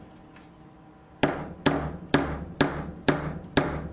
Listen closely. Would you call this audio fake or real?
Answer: real